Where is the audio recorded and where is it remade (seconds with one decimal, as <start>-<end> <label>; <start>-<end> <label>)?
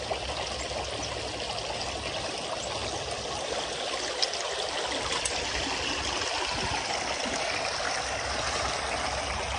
0.0-9.6 recorded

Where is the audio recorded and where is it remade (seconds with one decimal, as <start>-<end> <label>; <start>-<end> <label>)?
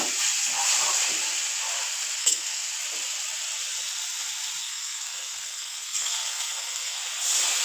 0.0-2.2 recorded; 2.2-2.7 remade; 2.7-4.6 recorded; 4.6-7.0 remade; 7.0-7.6 recorded